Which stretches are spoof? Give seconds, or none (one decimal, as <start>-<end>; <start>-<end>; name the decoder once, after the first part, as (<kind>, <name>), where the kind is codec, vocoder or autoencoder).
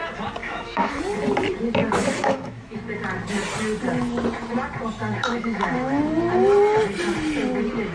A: 0.4-1.0 (autoencoder, DAC-VAE); 2.0-2.8; 5.0-6.0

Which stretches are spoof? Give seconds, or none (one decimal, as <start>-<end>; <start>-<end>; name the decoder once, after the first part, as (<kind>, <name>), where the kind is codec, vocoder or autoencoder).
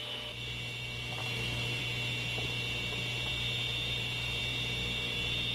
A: 1.2-1.8 (autoencoder, DAC-VAE)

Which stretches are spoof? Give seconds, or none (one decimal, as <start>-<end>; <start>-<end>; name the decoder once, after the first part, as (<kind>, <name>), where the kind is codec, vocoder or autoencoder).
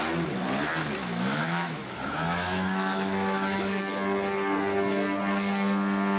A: 1.0-3.8 (autoencoder, DAC-VAE)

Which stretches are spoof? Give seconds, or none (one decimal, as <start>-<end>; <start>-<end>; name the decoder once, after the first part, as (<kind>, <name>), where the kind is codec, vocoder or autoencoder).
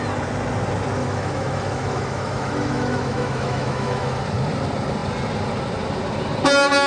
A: 1.0-4.2 (autoencoder, DAC-VAE)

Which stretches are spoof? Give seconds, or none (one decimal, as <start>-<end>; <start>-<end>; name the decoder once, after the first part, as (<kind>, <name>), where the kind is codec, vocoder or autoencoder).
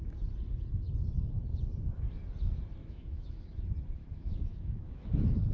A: 2.8-3.6 (autoencoder, DAC-VAE); 4.0-5.5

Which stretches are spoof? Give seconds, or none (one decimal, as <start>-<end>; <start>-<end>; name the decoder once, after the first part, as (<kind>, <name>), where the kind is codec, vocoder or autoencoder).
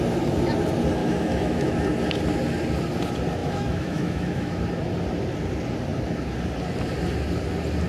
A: 1.0-1.7 (autoencoder, DAC-VAE); 3.4-4.6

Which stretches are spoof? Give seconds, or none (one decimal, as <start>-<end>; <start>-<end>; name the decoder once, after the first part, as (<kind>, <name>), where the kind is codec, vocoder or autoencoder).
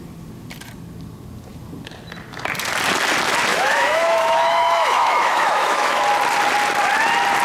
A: 3.5-6.0 (autoencoder, DAC-VAE)